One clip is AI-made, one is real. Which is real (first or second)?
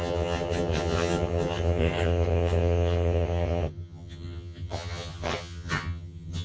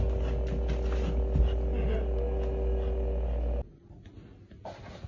second